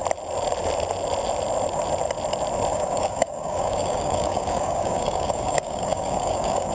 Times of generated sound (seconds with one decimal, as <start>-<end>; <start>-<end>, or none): 2.7-6.7